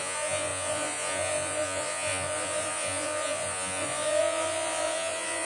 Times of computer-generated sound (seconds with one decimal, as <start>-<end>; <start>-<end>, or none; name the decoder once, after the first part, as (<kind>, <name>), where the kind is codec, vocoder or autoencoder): 0.0-5.4 (vocoder, Vocos)